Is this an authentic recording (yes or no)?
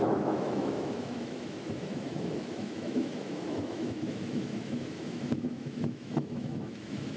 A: no